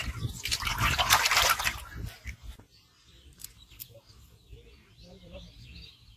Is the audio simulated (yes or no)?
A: no